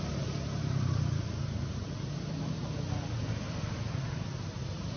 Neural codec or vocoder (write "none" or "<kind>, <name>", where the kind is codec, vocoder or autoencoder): vocoder, BigVGAN v2